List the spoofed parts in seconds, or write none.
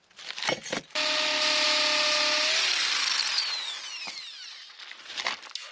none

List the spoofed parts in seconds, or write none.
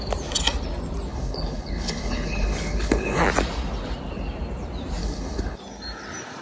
1.1-3.2 (codec, HILCodec); 5.0-5.6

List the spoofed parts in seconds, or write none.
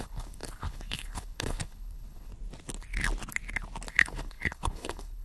0.0-2.3 (codec, HILCodec); 3.9-5.2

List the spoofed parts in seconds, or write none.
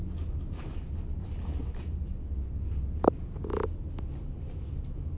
none